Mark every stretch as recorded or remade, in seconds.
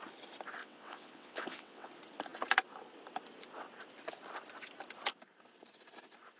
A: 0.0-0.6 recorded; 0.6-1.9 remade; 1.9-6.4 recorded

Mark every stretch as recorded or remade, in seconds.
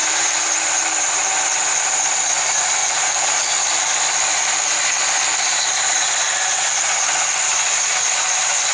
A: 0.0-1.1 recorded; 1.1-8.7 remade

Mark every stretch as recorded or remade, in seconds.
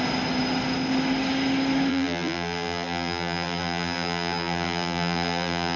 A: 0.0-1.9 recorded; 1.9-5.8 remade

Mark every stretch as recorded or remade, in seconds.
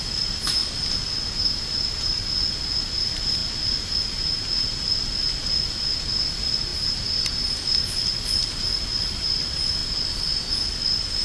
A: 0.0-0.6 remade; 0.6-2.8 recorded; 2.8-3.4 remade; 3.4-4.0 recorded; 4.0-9.8 remade; 9.8-10.5 recorded; 10.5-11.2 remade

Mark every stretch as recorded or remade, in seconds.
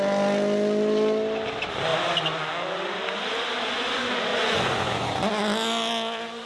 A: 0.0-4.3 recorded; 4.3-5.2 remade; 5.2-6.5 recorded